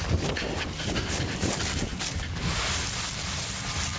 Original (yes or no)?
yes